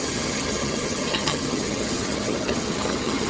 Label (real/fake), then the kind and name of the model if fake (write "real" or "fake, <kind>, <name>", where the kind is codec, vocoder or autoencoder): fake, vocoder, HiFi-GAN